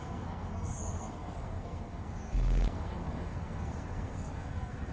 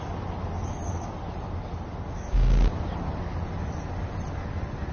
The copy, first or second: first